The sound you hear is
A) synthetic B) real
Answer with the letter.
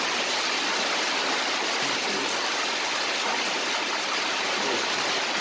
B